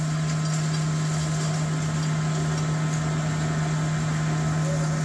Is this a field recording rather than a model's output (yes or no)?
yes